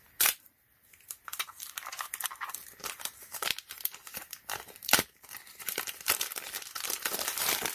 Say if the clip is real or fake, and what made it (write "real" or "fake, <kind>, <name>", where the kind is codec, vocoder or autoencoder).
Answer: fake, vocoder, BigVGAN v2